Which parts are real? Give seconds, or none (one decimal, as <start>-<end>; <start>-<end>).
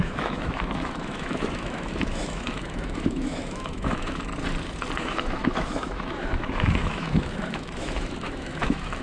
4.3-5.0